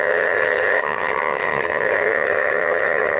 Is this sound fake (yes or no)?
yes